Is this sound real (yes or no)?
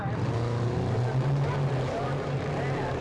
yes